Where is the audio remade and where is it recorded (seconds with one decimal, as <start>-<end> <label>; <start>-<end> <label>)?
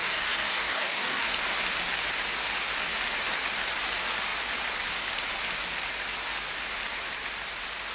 0.0-1.3 remade; 1.3-7.9 recorded